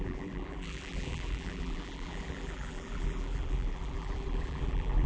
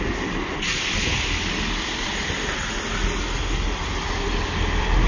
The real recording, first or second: second